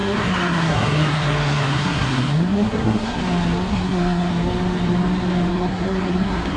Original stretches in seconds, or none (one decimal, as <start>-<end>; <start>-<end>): 3.2-3.7; 4.3-5.5